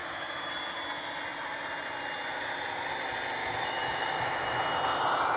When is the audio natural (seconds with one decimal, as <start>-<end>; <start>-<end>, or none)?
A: 0.5-3.4; 4.6-5.4

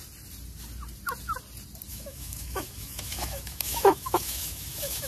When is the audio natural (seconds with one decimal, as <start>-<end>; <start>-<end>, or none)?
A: 0.0-1.9

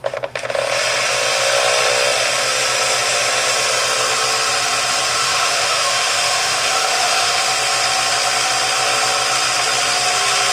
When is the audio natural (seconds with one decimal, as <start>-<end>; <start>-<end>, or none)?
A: 0.0-5.1; 7.4-10.5

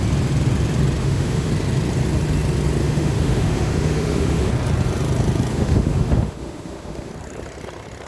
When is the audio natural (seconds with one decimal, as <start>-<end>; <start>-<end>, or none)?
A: 0.0-1.0; 1.5-2.8; 4.5-5.5; 7.1-8.1

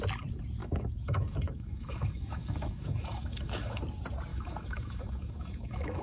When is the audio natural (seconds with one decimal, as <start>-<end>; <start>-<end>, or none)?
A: 0.0-0.6; 3.8-4.3

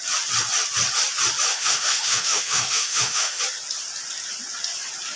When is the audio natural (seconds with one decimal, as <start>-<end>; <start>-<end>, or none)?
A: 0.0-1.5; 3.4-5.2

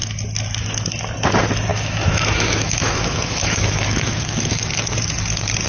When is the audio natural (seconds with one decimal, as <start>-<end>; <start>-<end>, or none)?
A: 0.0-1.7; 4.7-5.7